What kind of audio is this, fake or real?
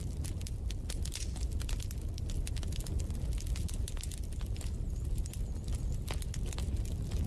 real